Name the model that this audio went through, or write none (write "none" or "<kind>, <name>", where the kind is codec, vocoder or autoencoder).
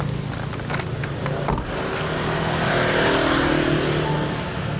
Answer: none